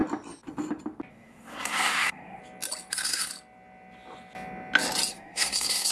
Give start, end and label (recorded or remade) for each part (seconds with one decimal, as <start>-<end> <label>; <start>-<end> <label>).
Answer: 0.0-1.1 recorded; 1.1-2.4 remade; 2.4-2.9 recorded; 2.9-3.3 remade; 3.3-5.1 recorded; 5.1-5.9 remade